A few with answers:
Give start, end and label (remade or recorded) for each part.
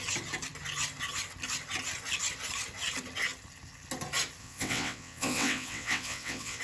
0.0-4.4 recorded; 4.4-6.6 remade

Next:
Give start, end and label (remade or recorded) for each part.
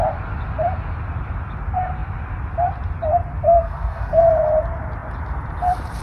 0.0-3.4 recorded; 3.4-4.2 remade; 4.2-6.0 recorded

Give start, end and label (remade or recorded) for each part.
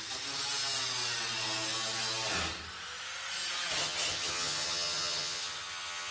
0.0-3.8 recorded; 3.8-6.1 remade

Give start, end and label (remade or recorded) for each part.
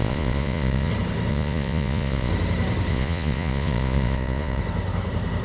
0.0-0.9 remade; 0.9-1.3 recorded; 1.3-2.3 remade; 2.3-2.9 recorded; 2.9-4.6 remade; 4.6-5.4 recorded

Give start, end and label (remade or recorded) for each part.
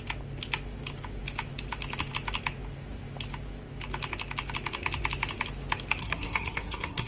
0.0-6.0 recorded; 6.0-7.1 remade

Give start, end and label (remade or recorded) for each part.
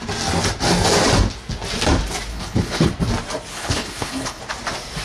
0.0-2.3 recorded; 2.3-2.9 remade; 2.9-3.5 recorded; 3.5-4.4 remade; 4.4-5.0 recorded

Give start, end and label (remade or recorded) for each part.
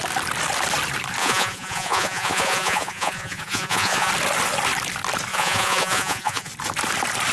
0.0-1.2 recorded; 1.2-4.1 remade; 4.1-5.3 recorded; 5.3-6.5 remade; 6.5-7.3 recorded